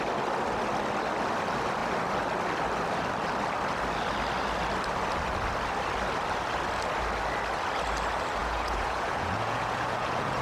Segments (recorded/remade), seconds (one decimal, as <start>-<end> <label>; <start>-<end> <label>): 0.0-8.4 recorded; 8.4-10.4 remade